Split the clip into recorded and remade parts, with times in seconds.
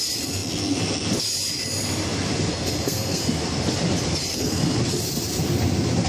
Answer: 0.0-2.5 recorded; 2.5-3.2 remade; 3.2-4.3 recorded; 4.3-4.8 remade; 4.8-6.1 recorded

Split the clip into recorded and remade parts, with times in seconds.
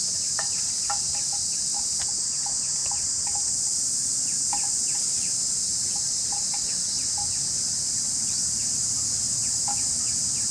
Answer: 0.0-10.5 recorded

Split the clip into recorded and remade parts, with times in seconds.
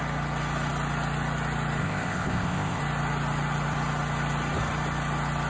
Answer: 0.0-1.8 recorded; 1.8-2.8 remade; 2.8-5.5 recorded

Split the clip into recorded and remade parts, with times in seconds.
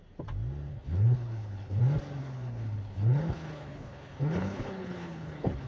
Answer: 0.0-0.7 recorded; 0.7-1.8 remade; 1.8-2.2 recorded; 2.2-5.7 remade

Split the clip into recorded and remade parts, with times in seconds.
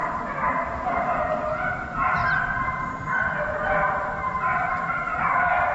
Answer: 0.0-5.7 recorded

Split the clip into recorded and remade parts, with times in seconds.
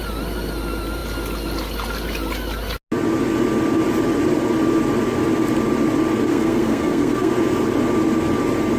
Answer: 0.0-6.3 recorded; 6.3-7.3 remade; 7.3-8.8 recorded